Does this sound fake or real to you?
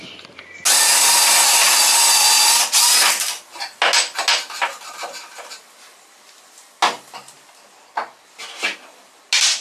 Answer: real